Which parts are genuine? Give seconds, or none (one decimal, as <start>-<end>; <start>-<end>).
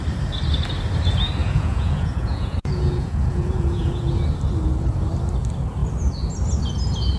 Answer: 0.0-1.4; 4.1-7.2